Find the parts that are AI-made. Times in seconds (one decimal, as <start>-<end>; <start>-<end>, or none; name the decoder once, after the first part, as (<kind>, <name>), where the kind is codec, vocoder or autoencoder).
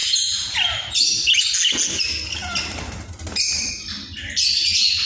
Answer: none